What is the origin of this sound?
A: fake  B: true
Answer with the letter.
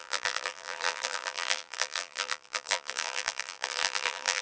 A